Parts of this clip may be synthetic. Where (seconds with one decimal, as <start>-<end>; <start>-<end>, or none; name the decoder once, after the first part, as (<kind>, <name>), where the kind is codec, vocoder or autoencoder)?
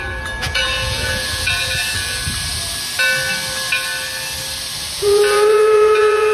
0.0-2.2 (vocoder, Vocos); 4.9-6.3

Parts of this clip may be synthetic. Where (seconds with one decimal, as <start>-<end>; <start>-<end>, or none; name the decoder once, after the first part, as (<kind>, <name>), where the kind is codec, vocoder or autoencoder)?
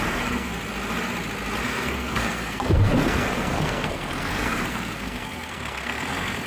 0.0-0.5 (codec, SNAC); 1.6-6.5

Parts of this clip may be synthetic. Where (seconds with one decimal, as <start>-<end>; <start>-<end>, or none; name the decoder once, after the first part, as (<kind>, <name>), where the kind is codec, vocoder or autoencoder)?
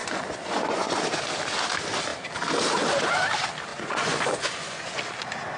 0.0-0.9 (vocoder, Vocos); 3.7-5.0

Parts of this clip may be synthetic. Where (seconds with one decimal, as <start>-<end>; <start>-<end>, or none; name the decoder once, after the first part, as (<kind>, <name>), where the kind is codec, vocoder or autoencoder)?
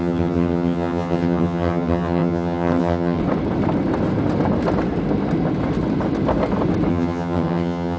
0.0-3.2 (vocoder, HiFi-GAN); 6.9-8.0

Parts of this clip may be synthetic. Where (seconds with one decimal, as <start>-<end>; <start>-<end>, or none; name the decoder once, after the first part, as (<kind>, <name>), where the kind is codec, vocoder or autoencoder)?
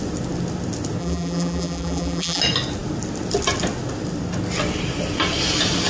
1.0-2.4 (vocoder, BigVGAN v2)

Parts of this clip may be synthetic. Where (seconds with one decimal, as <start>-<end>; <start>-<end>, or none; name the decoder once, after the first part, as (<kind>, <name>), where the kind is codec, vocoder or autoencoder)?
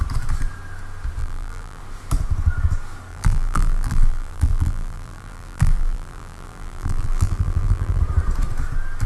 1.2-1.8 (vocoder, BigVGAN v2); 3.1-8.0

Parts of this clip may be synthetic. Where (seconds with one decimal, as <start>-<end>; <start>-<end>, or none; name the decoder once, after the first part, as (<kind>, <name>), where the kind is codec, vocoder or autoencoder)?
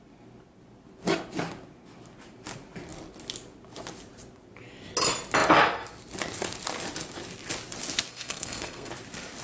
8.1-8.9 (codec, SNAC)